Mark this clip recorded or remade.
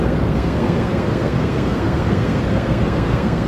remade